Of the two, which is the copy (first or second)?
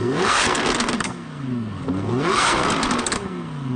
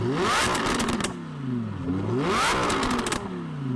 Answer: first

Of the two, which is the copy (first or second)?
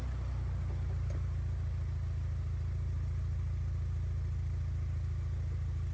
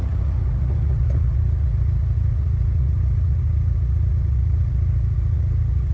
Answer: second